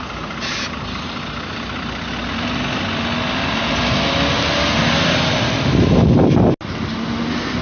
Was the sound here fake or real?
real